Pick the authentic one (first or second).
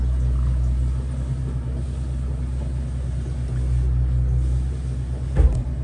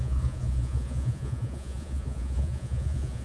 first